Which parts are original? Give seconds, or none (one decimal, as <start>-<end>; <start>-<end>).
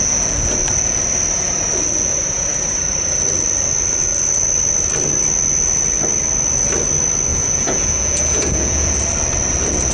0.0-7.3; 8.9-9.9